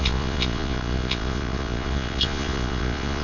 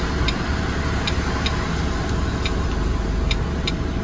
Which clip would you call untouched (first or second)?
second